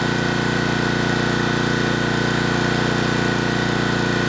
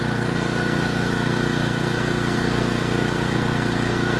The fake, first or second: second